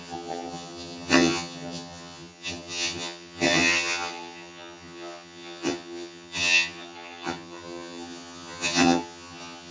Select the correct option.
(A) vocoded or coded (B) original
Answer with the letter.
A